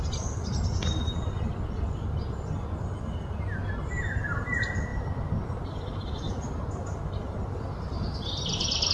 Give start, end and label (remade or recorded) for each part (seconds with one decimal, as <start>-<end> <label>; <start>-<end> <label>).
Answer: 0.0-8.9 recorded